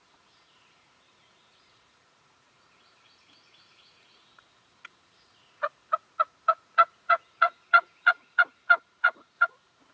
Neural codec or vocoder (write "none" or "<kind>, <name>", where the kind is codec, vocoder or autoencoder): vocoder, Vocos